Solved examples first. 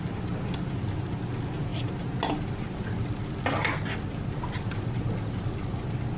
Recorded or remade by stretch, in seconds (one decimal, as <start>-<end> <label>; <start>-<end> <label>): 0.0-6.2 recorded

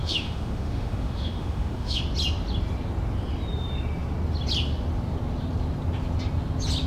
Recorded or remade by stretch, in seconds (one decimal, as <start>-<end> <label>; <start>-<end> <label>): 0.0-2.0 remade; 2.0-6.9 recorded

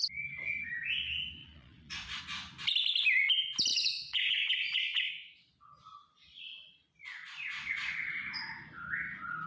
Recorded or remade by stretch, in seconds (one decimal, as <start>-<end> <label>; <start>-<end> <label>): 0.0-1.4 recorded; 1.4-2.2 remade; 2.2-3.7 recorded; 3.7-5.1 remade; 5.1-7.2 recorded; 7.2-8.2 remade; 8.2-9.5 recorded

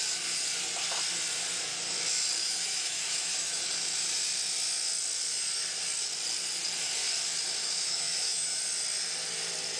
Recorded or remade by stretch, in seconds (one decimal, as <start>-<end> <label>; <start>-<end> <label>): 0.0-2.4 recorded; 2.4-3.7 remade; 3.7-7.6 recorded; 7.6-8.6 remade; 8.6-9.8 recorded